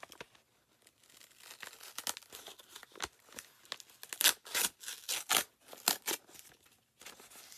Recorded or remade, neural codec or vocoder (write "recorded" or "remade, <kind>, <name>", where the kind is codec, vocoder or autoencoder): recorded